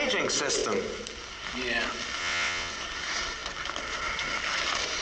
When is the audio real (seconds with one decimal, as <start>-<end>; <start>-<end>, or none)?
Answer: 0.0-2.2; 2.7-5.0